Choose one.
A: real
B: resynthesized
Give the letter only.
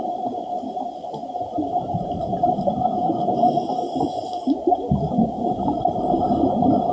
B